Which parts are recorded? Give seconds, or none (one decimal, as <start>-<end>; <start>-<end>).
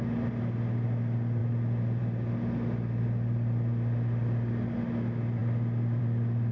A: 0.0-6.5